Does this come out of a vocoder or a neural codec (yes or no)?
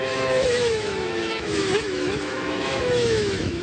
yes